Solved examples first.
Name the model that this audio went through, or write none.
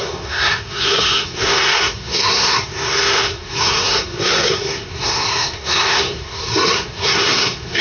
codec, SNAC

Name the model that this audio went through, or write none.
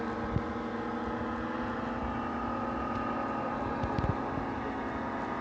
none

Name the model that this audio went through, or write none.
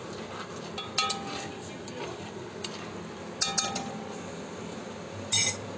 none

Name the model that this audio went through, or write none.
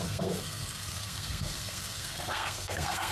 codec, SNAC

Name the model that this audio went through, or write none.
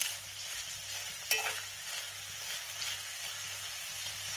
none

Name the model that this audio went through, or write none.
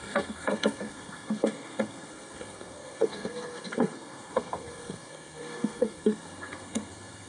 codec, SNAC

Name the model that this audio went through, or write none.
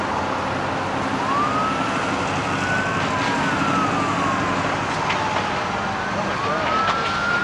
none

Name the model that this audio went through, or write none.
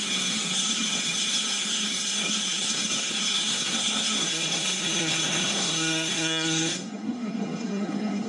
codec, SNAC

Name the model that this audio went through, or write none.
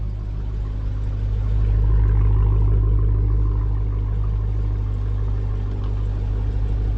none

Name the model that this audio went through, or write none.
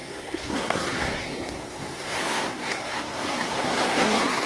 codec, SNAC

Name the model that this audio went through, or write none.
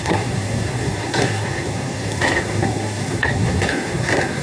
codec, SNAC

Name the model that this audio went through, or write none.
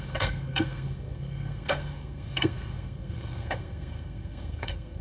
codec, SNAC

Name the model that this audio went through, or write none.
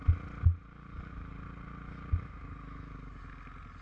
none